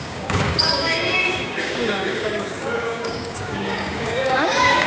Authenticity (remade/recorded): remade